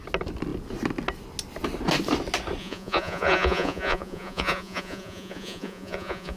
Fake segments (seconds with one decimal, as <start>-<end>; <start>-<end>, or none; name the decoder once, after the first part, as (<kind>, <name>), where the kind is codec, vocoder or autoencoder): 2.6-6.4 (vocoder, Vocos)